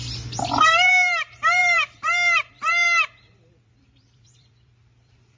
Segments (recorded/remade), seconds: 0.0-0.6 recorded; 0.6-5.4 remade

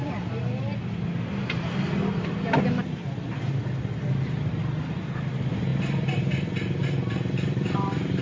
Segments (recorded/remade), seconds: 0.0-8.2 recorded